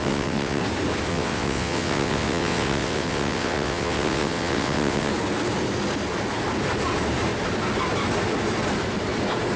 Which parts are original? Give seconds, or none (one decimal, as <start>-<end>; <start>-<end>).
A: 0.6-1.1; 5.1-9.6